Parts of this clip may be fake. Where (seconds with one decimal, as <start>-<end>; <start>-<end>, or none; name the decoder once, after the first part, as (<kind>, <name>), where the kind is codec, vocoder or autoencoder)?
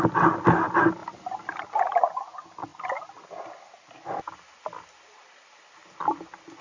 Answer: none